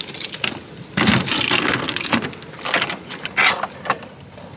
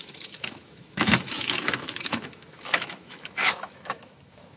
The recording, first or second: first